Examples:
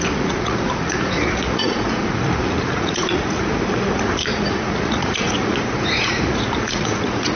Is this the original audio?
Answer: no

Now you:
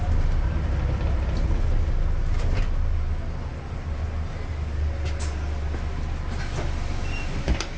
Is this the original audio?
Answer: yes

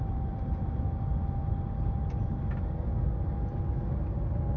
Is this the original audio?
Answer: yes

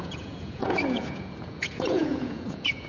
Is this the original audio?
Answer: no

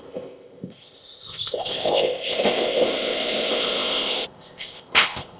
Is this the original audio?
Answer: no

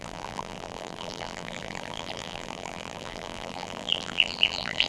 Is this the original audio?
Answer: no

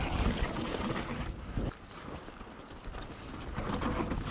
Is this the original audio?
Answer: yes